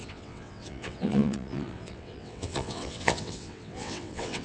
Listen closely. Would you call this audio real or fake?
fake